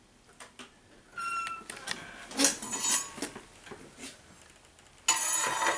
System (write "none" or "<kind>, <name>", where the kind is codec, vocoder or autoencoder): none